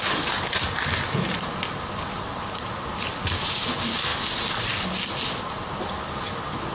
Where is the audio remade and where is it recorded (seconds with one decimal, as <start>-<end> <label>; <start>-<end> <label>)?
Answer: 0.0-6.7 recorded